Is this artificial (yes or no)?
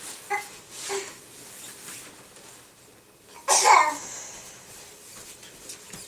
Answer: no